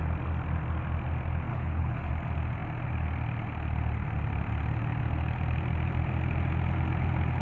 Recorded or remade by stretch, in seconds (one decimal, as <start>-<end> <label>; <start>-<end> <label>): 0.0-1.5 recorded; 1.5-2.1 remade; 2.1-7.4 recorded